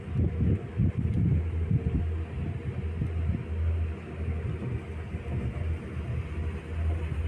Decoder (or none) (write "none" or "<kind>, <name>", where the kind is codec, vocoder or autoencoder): none